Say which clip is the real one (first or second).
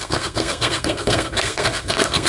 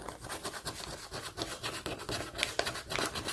second